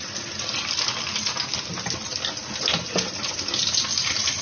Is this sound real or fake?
real